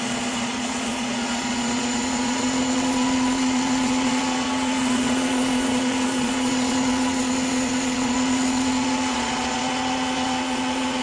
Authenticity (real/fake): fake